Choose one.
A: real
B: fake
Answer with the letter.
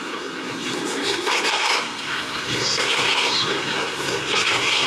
B